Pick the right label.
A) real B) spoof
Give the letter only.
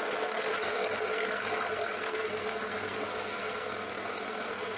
B